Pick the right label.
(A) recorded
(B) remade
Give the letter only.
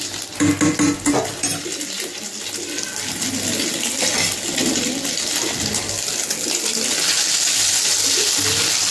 A